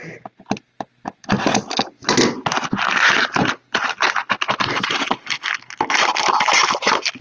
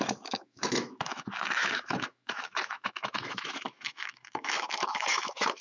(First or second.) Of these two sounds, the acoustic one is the first